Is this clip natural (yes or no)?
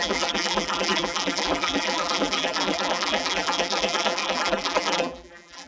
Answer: no